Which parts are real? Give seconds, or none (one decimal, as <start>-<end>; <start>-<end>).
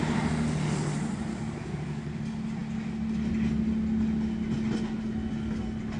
0.0-1.3; 2.2-6.0